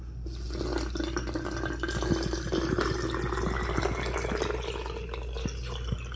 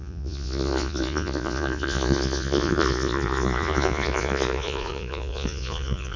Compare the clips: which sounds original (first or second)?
first